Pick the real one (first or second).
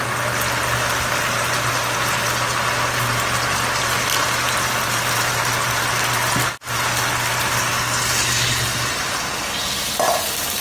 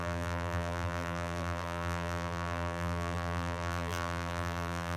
first